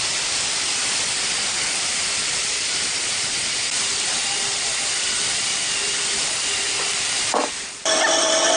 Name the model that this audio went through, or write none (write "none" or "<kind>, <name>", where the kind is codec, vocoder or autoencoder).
vocoder, BigVGAN v2